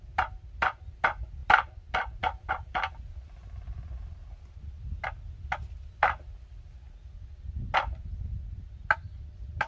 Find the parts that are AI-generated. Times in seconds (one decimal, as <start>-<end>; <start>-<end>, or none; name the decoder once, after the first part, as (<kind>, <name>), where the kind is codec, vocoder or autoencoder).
none